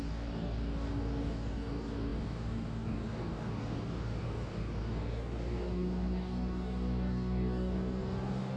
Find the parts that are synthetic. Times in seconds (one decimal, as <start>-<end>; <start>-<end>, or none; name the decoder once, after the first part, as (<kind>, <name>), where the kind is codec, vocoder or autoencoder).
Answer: 0.0-8.6 (codec, DAC)